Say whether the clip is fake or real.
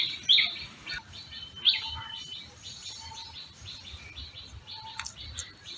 real